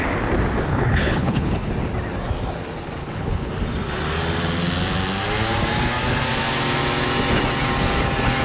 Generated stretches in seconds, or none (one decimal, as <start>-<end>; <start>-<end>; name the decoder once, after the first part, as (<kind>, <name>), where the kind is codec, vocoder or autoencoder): 0.7-1.7 (codec, HILCodec); 3.0-3.5